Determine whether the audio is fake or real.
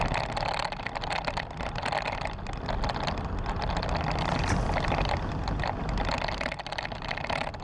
real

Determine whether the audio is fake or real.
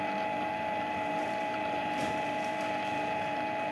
fake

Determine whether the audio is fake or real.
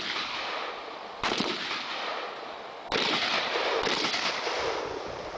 real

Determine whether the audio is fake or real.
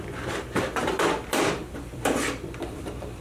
fake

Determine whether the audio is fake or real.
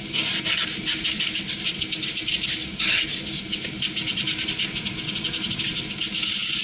real